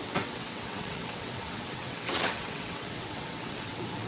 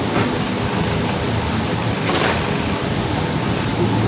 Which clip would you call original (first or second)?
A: second